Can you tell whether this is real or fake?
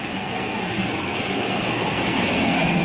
fake